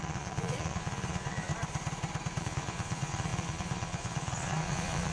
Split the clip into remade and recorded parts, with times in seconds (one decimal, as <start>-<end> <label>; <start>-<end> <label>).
0.0-1.5 remade; 1.5-2.4 recorded; 2.4-5.1 remade